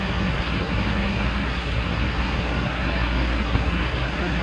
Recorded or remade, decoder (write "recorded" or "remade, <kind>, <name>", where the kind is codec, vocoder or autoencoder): remade, codec, SNAC